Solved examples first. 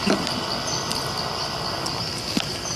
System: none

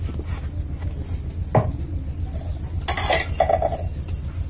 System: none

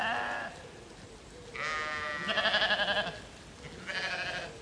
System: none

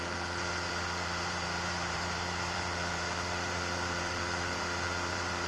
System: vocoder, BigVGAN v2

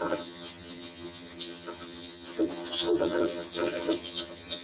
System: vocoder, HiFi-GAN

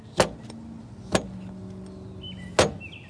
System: none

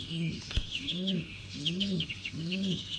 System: autoencoder, DAC-VAE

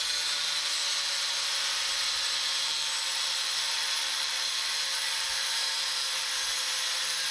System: none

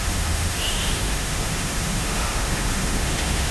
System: autoencoder, DAC-VAE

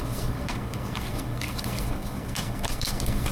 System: codec, SNAC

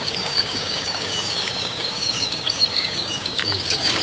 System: codec, DAC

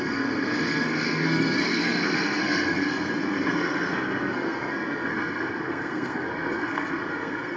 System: codec, SNAC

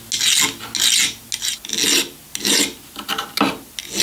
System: none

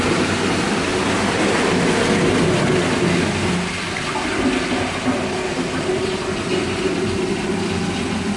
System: none